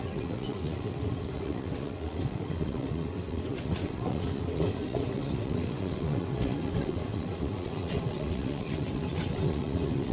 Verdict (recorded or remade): remade